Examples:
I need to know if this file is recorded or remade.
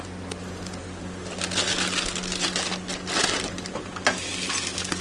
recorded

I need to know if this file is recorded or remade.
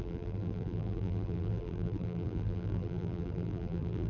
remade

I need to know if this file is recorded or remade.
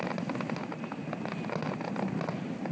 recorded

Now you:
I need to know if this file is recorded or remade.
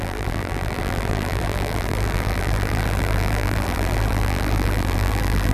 remade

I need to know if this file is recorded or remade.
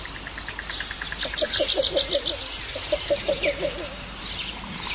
recorded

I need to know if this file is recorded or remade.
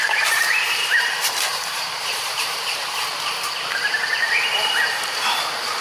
remade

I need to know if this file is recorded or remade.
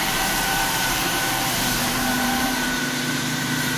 remade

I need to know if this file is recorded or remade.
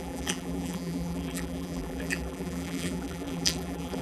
remade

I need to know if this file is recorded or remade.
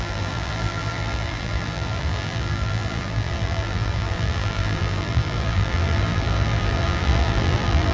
remade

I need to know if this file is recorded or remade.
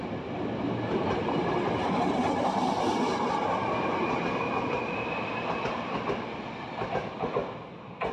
recorded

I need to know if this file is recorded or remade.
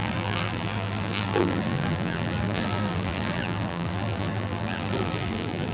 remade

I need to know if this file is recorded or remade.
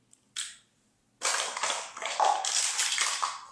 recorded